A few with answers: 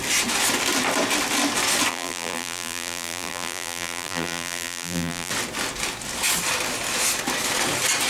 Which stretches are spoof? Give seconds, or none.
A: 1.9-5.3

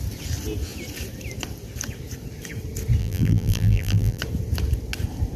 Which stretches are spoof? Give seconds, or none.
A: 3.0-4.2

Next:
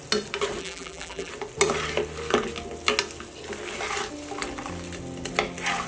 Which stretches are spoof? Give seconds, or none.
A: 0.6-1.3